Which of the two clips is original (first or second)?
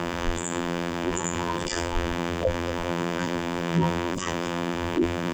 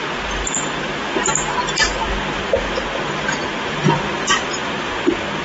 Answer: second